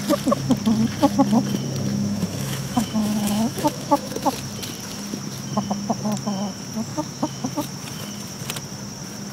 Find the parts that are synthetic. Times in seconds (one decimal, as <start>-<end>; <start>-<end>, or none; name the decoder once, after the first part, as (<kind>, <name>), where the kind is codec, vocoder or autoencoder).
1.9-4.3 (autoencoder, DAC-VAE); 6.9-7.5